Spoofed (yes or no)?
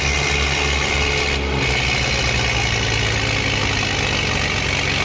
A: no